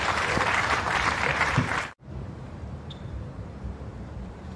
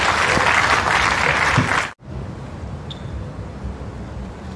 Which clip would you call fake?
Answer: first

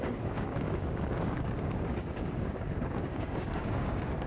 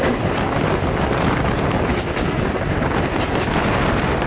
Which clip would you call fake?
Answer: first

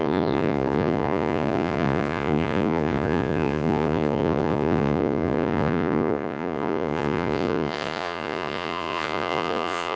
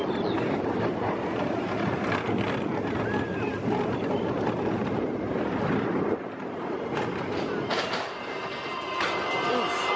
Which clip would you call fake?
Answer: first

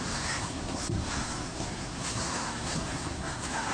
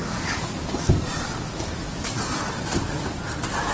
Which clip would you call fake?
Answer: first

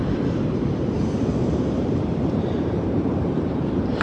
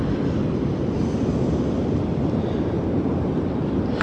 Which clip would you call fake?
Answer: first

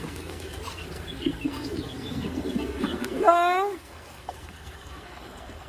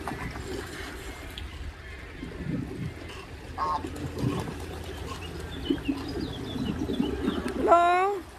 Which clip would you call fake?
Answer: first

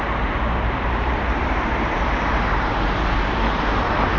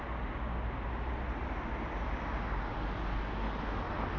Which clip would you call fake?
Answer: first